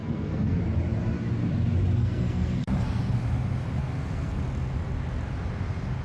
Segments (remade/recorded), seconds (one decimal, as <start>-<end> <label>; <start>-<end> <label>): 0.0-0.6 remade; 0.6-2.0 recorded; 2.0-3.0 remade; 3.0-3.8 recorded; 3.8-4.4 remade; 4.4-6.0 recorded